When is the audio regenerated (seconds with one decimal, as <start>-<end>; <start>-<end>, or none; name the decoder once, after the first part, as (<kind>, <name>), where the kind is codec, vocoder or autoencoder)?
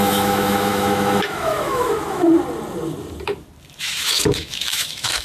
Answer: 0.0-2.3 (autoencoder, DAC-VAE); 3.8-5.2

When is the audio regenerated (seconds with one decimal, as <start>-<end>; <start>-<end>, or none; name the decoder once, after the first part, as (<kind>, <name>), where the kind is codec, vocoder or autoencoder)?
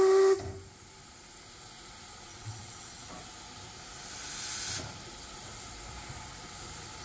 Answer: 2.3-3.1 (vocoder, WaveNeXt)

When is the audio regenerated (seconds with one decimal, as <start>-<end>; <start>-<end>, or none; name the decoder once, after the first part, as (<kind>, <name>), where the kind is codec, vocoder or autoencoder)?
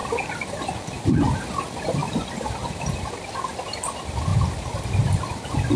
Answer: none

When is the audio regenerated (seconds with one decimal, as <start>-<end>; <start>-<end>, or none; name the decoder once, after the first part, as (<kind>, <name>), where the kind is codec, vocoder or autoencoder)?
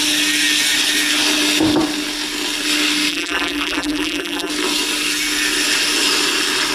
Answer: 3.1-4.5 (vocoder, BigVGAN v2)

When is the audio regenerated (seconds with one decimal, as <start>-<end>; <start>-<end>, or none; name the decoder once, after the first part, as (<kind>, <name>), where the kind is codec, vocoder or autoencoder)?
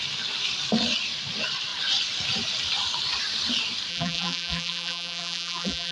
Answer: 3.9-5.9 (vocoder, BigVGAN v2)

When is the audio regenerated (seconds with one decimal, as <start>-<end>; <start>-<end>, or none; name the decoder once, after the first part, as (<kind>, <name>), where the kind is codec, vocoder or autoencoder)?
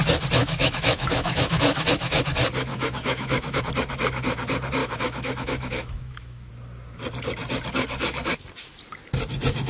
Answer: 0.4-2.2 (autoencoder, DAC-VAE); 2.7-3.6; 4.8-6.5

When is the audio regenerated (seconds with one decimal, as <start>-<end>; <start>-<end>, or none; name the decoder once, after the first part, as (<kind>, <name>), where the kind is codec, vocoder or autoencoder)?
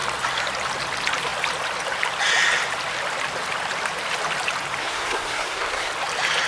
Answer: 4.8-5.9 (codec, SNAC)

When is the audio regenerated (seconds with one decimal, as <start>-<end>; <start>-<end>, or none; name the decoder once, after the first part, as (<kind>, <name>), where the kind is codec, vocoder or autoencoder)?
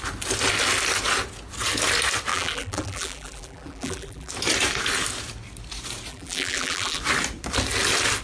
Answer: 2.3-4.3 (vocoder, BigVGAN v2); 6.1-7.0